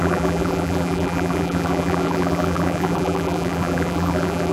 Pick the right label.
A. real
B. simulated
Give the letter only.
B